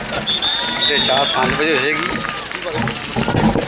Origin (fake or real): real